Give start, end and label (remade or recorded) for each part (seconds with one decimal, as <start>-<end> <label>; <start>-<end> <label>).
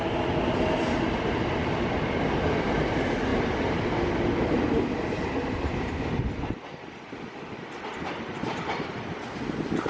0.0-9.9 recorded